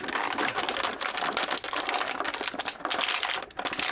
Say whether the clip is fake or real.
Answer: real